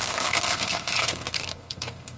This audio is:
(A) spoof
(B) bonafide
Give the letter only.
A